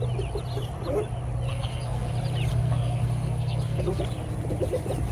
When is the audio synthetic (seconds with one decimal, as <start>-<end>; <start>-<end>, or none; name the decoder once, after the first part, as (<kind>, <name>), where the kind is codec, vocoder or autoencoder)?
1.5-2.1 (codec, SNAC); 2.5-4.0

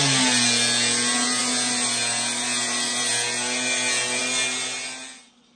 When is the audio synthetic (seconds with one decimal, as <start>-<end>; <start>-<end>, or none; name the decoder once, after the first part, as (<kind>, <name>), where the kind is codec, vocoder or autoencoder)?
none

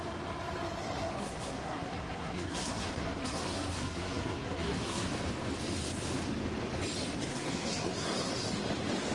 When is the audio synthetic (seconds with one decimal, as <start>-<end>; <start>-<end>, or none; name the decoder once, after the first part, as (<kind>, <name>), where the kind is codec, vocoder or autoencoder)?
0.8-5.1 (codec, SNAC); 7.3-8.3

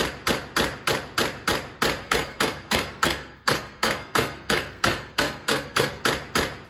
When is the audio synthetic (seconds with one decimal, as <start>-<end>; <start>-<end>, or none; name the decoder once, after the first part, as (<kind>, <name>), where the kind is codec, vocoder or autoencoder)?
2.0-6.0 (codec, SNAC)

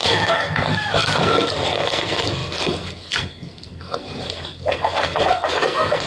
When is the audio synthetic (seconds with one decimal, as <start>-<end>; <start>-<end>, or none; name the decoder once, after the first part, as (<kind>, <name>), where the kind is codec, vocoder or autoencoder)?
0.0-6.1 (codec, SNAC)

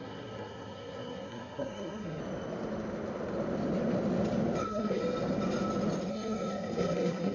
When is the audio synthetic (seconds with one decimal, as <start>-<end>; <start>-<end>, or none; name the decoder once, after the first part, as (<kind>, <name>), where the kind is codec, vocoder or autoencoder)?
0.0-2.2 (codec, SNAC); 4.6-5.0; 6.1-7.3

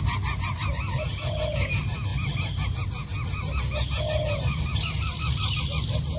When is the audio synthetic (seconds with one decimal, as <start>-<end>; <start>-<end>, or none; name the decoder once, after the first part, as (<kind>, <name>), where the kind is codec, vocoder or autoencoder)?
none